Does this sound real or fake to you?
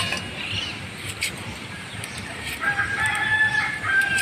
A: fake